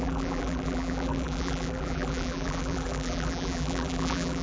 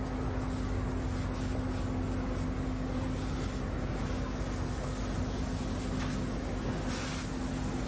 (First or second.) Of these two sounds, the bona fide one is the second